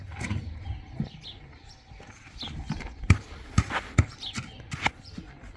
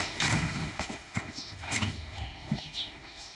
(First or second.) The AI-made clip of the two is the second